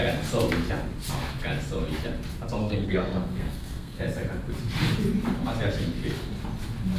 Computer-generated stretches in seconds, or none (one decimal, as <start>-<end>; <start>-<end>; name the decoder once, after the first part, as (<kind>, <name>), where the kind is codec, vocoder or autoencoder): 2.6-4.0 (codec, SNAC)